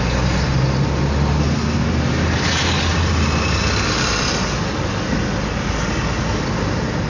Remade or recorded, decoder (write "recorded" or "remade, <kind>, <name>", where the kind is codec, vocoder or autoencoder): recorded